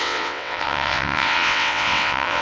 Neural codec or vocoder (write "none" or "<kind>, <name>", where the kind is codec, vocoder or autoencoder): vocoder, WaveNeXt